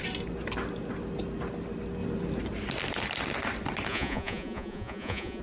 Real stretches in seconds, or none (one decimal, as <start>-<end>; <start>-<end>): 0.0-3.9

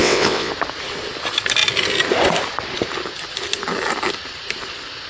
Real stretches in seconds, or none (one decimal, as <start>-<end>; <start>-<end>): 0.5-5.1